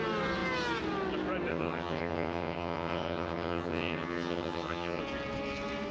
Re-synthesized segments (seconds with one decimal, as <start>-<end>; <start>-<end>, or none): 1.5-5.0